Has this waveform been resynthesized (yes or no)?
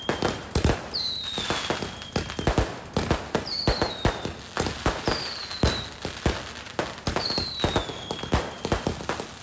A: no